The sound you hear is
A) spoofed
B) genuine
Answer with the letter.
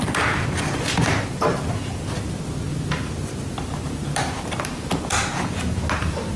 B